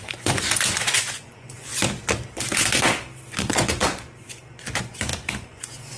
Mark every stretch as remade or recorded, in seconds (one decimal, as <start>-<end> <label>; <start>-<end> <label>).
0.0-1.7 remade; 1.7-3.4 recorded; 3.4-6.0 remade